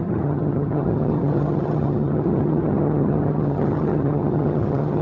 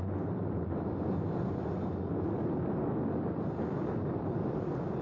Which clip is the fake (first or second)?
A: first